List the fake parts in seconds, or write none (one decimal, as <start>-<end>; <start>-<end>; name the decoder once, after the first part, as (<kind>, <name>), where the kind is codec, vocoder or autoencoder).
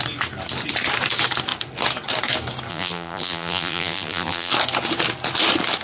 2.7-4.5 (vocoder, BigVGAN v2)